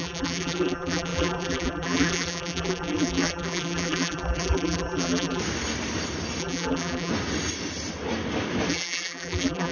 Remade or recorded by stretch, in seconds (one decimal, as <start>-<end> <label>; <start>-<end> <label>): 0.0-5.4 remade; 5.4-6.4 recorded; 6.4-7.1 remade; 7.1-8.7 recorded; 8.7-9.7 remade

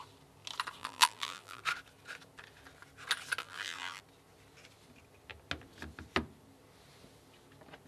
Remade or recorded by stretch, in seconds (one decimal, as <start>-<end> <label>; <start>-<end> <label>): 0.0-0.8 recorded; 0.8-1.6 remade; 1.6-3.4 recorded; 3.4-4.0 remade; 4.0-7.9 recorded